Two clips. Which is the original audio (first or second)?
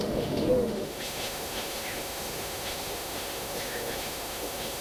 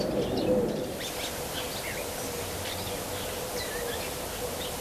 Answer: second